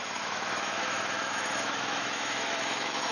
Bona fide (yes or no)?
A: no